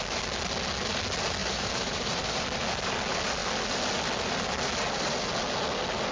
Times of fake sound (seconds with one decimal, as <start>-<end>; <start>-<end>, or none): 1.4-2.6

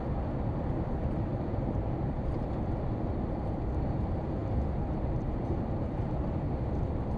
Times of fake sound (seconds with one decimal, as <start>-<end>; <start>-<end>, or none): 1.3-2.4; 4.4-6.3

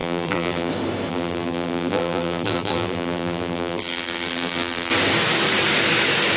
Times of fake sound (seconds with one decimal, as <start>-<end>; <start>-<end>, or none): 0.0-0.7; 1.1-4.9

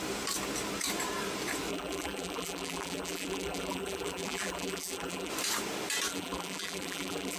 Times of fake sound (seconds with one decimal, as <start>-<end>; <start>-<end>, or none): 1.7-5.3; 6.1-7.4

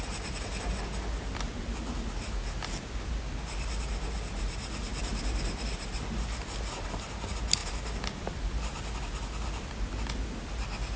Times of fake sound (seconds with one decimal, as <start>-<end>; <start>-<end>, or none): 7.6-8.4